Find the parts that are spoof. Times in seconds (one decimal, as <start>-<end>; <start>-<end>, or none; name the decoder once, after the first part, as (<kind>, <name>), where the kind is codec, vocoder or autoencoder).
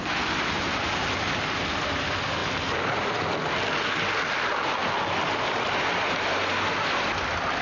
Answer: none